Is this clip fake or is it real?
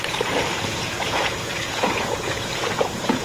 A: fake